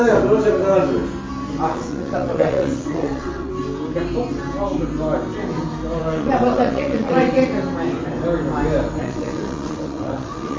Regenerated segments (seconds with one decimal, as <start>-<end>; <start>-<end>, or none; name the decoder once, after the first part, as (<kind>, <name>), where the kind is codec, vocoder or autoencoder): 1.7-3.5 (vocoder, WaveNeXt); 6.0-7.5; 9.0-10.6

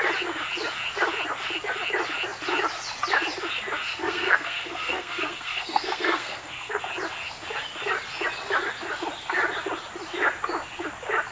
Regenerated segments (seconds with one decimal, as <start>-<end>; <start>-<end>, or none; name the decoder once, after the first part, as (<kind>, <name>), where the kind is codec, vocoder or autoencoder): 3.9-6.8 (codec, SNAC)

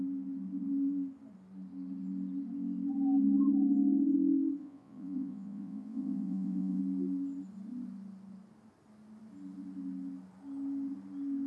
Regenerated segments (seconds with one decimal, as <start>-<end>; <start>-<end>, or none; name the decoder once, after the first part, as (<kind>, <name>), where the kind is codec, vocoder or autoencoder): 4.6-6.8 (vocoder, Vocos)

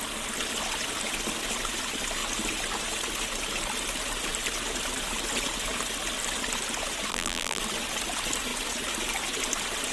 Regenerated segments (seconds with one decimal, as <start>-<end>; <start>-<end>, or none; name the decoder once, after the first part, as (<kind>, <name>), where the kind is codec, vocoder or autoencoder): 7.1-7.6 (vocoder, BigVGAN v2)

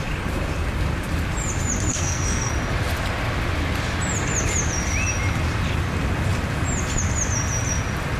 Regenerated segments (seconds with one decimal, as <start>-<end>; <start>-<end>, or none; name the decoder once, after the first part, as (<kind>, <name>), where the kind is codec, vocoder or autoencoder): 1.9-2.5 (codec, SNAC)

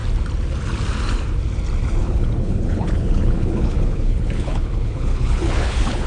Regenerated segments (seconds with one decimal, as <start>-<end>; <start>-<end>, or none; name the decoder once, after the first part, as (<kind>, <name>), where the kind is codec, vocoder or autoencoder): 2.0-6.1 (codec, HILCodec)